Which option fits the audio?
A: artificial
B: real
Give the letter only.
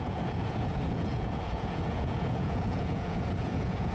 A